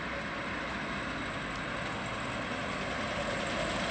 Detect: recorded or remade recorded